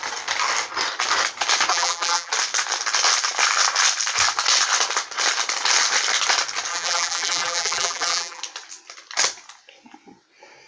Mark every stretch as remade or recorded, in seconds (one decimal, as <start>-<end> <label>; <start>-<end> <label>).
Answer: 0.0-1.7 recorded; 1.7-2.3 remade; 2.3-6.7 recorded; 6.7-8.4 remade; 8.4-10.7 recorded